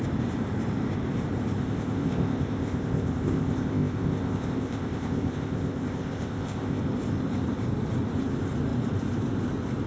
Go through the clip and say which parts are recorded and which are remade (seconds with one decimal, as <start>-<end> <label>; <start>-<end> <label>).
0.0-1.6 recorded; 1.6-6.8 remade; 6.8-9.9 recorded